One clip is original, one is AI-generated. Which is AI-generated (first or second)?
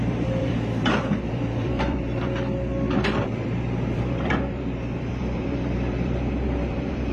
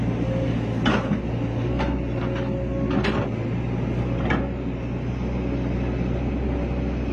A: first